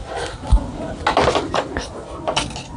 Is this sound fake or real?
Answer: real